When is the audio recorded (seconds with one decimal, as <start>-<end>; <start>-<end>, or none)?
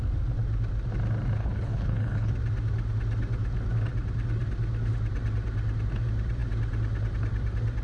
0.0-1.4; 2.3-7.8